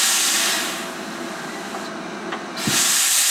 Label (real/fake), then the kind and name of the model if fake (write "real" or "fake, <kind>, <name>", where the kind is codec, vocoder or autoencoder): real